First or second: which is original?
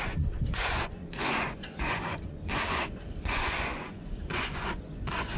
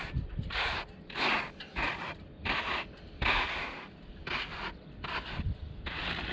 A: second